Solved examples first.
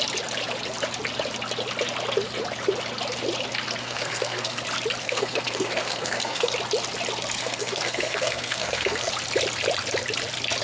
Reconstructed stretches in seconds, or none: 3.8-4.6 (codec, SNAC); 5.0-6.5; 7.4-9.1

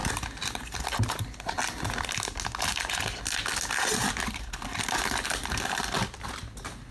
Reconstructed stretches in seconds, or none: none

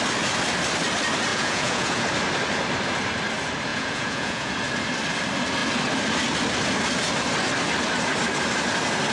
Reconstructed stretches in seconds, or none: 1.3-2.0 (vocoder, Vocos); 3.7-4.5